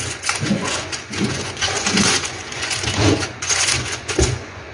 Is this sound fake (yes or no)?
yes